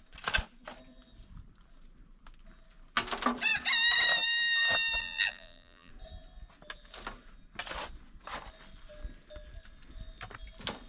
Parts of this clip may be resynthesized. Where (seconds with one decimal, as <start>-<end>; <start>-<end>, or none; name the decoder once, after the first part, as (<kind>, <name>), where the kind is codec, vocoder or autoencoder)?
5.0-5.9 (vocoder, BigVGAN v2)